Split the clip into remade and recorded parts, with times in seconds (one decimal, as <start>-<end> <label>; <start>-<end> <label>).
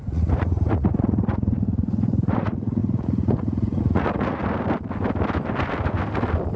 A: 0.0-4.4 remade; 4.4-6.6 recorded